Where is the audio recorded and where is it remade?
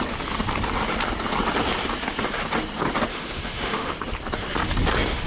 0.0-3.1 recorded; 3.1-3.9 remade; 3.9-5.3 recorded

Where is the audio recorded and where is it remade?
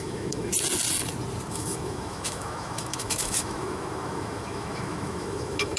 0.0-0.5 remade; 0.5-1.5 recorded; 1.5-5.8 remade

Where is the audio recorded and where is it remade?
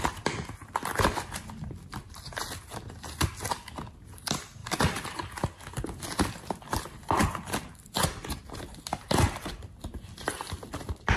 0.0-11.2 recorded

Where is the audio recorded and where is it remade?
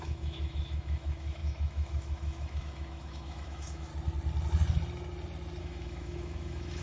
0.0-3.9 remade; 3.9-5.6 recorded; 5.6-6.8 remade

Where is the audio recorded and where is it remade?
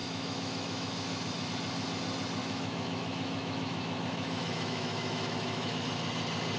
0.0-1.5 remade; 1.5-2.4 recorded; 2.4-5.9 remade; 5.9-6.6 recorded